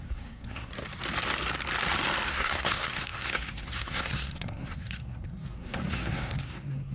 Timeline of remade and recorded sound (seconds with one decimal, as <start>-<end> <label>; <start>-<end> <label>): 0.0-0.7 remade; 0.7-2.3 recorded; 2.3-6.9 remade